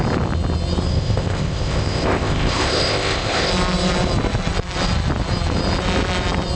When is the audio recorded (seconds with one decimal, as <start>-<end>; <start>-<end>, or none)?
0.0-0.9; 3.5-6.6